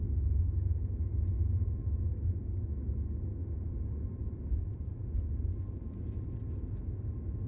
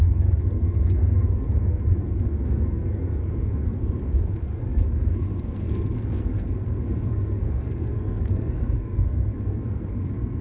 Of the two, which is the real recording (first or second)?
first